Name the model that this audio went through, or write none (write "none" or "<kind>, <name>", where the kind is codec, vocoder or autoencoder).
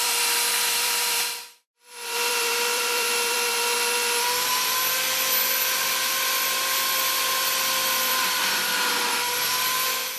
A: vocoder, BigVGAN v2